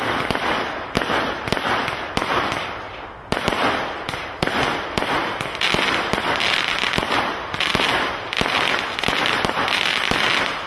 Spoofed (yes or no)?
no